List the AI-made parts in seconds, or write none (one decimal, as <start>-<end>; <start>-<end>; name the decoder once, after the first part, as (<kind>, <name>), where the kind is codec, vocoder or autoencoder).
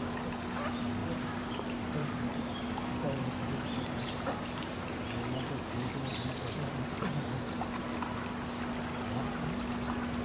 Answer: 1.0-5.0 (vocoder, BigVGAN v2)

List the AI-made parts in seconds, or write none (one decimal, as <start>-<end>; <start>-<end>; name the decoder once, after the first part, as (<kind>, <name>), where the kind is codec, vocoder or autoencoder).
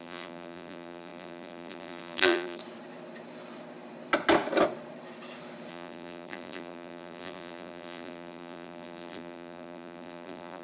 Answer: 0.0-2.6 (vocoder, BigVGAN v2); 5.7-10.6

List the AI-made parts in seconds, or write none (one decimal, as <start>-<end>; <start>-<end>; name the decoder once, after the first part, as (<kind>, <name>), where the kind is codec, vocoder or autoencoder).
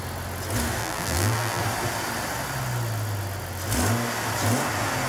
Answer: 0.8-1.6 (vocoder, BigVGAN v2)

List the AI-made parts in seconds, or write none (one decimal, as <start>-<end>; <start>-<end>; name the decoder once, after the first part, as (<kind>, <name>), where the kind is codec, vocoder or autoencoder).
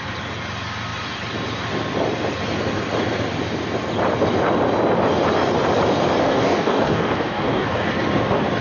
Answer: 6.2-7.9 (codec, DAC)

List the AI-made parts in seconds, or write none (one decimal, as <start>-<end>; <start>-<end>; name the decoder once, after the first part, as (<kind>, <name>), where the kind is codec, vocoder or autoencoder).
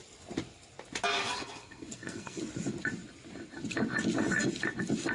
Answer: 1.1-2.4 (codec, SNAC)